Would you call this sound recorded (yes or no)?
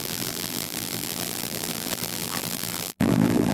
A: no